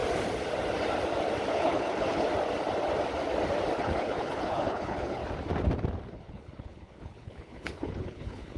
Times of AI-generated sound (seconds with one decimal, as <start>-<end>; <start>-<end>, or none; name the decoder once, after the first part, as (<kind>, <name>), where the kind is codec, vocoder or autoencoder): 1.5-2.3 (codec, HILCodec); 3.8-5.2; 6.1-8.6